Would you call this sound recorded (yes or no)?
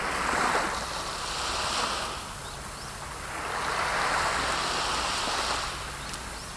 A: yes